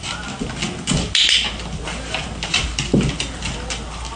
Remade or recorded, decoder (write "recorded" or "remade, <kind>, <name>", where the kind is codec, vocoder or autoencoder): recorded